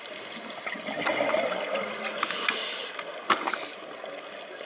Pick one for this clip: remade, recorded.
recorded